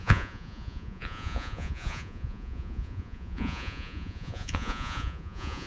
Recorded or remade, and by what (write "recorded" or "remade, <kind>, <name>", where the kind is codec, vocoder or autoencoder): remade, vocoder, Vocos